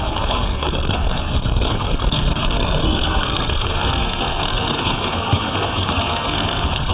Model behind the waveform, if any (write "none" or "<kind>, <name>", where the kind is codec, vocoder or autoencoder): codec, SNAC